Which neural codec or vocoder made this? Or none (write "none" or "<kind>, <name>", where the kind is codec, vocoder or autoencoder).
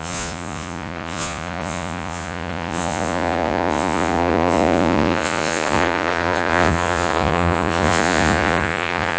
vocoder, Vocos